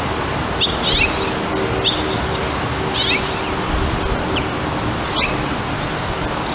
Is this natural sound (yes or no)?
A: yes